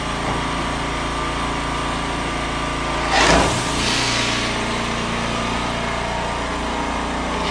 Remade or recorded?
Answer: recorded